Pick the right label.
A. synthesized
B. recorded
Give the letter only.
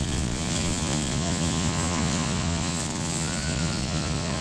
A